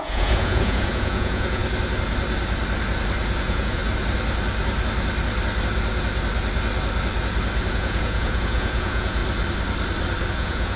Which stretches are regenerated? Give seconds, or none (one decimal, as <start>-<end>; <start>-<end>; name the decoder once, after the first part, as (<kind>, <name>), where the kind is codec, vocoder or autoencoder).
0.0-1.6 (vocoder, Vocos); 3.4-3.8; 7.7-9.2; 10.3-10.8